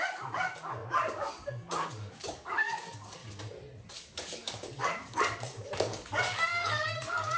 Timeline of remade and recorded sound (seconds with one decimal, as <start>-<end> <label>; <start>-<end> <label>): 0.0-3.2 remade; 3.2-3.9 recorded; 3.9-7.4 remade